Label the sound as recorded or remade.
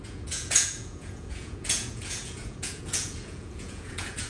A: remade